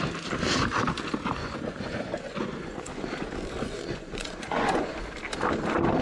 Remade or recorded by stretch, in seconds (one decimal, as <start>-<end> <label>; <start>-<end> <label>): 0.0-1.4 recorded; 1.4-5.0 remade; 5.0-6.0 recorded